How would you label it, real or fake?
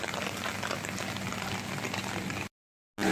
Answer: real